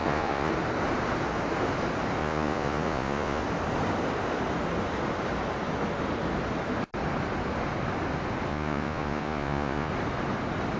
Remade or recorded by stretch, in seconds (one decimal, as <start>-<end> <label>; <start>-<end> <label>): 0.0-0.5 remade; 0.5-2.2 recorded; 2.2-3.4 remade; 3.4-8.5 recorded; 8.5-9.9 remade; 9.9-10.8 recorded